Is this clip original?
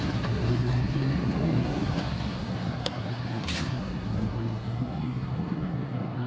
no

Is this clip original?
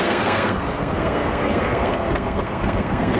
no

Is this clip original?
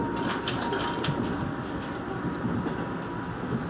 yes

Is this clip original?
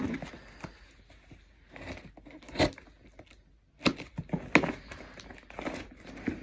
yes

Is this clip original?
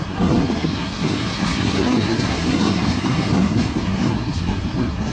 no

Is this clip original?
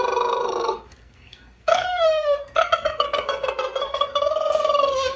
no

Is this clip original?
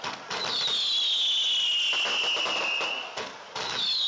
yes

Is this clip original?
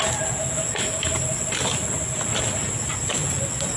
yes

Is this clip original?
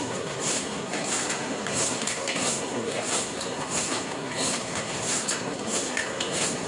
no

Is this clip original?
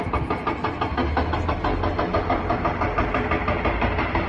yes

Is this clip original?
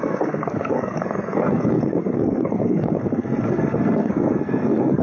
no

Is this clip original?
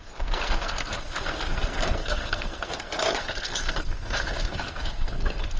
no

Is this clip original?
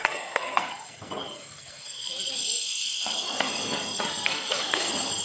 no